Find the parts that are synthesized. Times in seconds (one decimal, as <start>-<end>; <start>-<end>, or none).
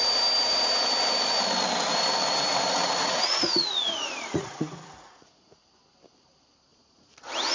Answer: 2.7-5.6; 6.7-7.5